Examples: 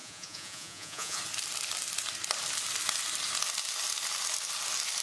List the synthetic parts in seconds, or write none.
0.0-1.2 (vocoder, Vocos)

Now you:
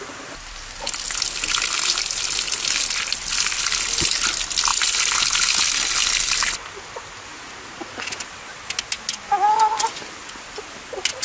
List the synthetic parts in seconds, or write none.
none

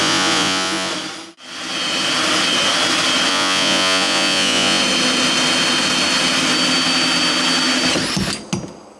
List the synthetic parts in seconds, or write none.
0.0-0.9 (vocoder, Vocos); 3.3-4.8

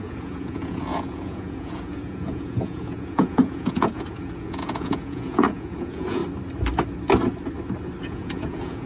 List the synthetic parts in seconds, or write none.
0.0-6.2 (vocoder, Vocos); 8.0-8.9